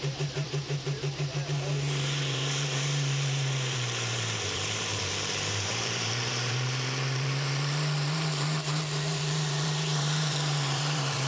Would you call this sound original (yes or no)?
no